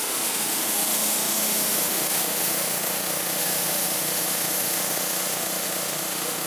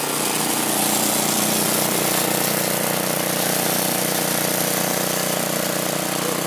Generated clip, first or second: first